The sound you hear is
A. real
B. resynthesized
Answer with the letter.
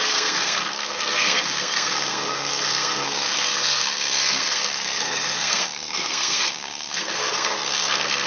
B